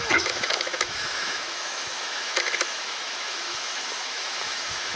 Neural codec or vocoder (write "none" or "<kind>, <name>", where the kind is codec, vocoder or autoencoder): autoencoder, DAC-VAE